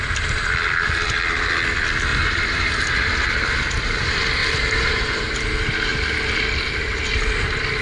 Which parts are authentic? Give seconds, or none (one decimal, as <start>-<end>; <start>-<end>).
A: 0.0-2.1; 2.9-4.4; 5.3-7.8

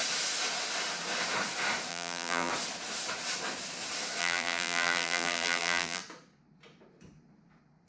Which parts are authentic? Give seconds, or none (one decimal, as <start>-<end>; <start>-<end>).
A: 0.0-1.9; 2.5-4.2; 6.0-7.9